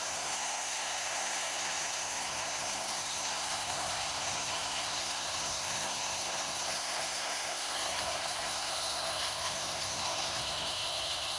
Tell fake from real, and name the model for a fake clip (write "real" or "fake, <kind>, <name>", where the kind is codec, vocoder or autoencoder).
fake, codec, SNAC